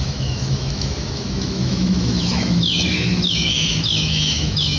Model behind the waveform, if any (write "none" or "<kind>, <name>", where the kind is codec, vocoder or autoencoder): autoencoder, DAC-VAE